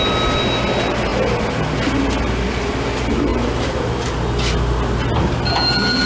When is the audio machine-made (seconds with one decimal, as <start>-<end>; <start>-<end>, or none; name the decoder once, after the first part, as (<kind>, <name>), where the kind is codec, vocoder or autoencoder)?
none